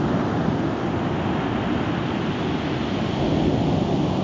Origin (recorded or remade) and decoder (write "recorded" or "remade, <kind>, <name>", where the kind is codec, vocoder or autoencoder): recorded